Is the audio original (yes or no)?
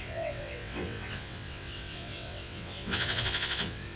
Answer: no